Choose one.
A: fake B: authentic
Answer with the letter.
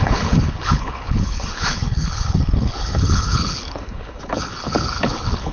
A